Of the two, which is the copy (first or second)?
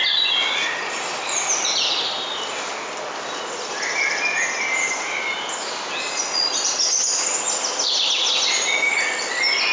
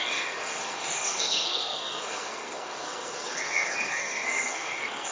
second